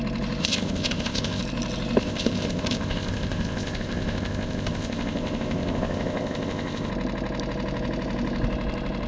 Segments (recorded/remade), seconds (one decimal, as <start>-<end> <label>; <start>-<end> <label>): 0.0-0.4 recorded; 0.4-1.4 remade; 1.4-2.0 recorded; 2.0-6.9 remade; 6.9-9.1 recorded